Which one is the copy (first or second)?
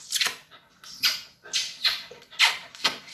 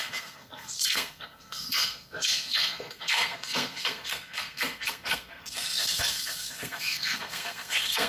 second